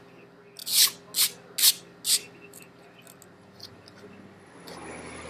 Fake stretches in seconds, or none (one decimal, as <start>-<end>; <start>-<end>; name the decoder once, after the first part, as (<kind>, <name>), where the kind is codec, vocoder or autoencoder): none